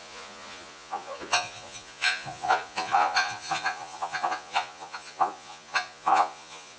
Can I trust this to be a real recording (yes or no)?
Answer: no